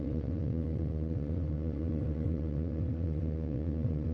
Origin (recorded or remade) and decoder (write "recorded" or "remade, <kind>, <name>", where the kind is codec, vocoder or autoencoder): remade, vocoder, WaveNeXt